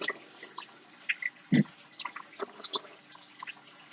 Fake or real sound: real